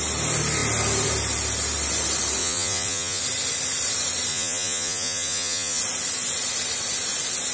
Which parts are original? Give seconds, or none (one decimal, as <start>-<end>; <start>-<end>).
0.0-2.4; 3.2-4.3; 5.8-7.5